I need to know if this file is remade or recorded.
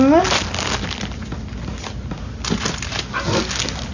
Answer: recorded